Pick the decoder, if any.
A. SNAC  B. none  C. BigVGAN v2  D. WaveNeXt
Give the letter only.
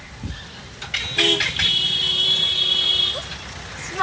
B